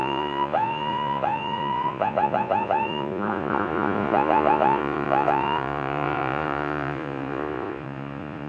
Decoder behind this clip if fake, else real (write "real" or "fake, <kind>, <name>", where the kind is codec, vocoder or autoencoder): fake, vocoder, Vocos